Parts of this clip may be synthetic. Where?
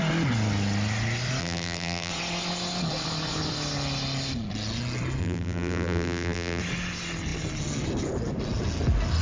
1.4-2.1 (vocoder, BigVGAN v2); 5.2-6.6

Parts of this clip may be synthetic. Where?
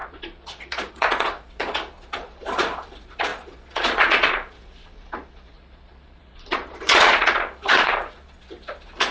0.0-9.1 (vocoder, Vocos)